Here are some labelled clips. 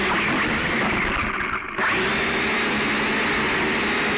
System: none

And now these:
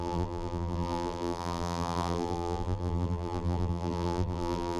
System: vocoder, BigVGAN v2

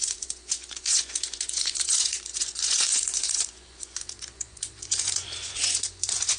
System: vocoder, Vocos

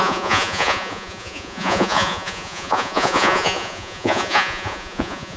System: vocoder, Vocos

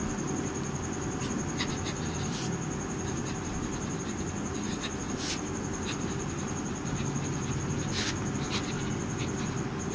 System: none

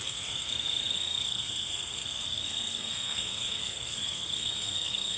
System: codec, SNAC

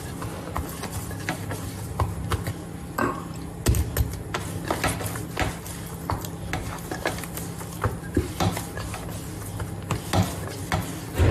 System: none